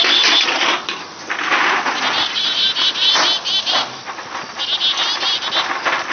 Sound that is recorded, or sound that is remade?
recorded